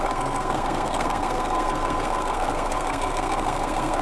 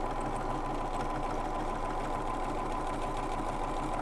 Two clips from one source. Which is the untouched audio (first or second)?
second